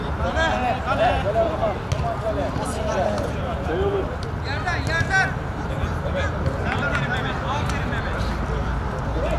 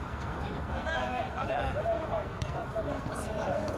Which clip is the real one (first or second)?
first